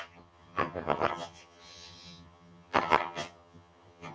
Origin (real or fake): fake